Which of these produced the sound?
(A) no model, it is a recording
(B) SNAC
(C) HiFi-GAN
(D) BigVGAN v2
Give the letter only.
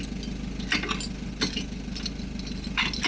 A